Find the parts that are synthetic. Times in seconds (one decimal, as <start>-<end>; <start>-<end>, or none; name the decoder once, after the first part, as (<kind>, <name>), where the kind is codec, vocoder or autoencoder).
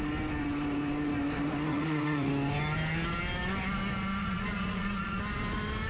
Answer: 1.7-2.3 (vocoder, Vocos); 4.2-5.2